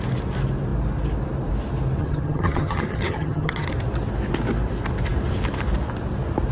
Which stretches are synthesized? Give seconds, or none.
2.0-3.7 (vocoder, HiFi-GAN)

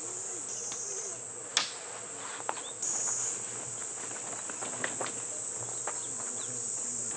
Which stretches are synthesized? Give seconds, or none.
none